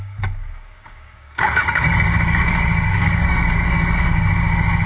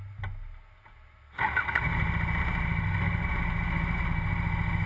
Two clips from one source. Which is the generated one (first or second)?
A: first